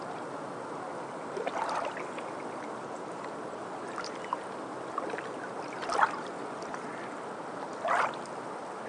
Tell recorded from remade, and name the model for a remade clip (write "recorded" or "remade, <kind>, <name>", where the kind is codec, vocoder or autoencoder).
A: recorded